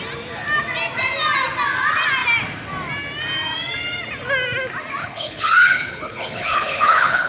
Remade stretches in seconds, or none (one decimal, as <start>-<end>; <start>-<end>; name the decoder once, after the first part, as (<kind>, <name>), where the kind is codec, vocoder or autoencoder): 5.0-7.3 (codec, HILCodec)